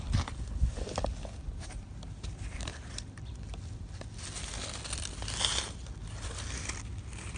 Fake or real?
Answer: real